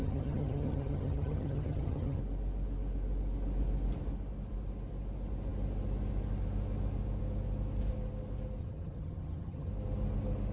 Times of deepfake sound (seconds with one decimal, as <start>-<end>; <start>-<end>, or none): 0.0-2.2; 8.6-9.7